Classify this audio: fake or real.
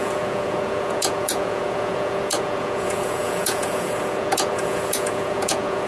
fake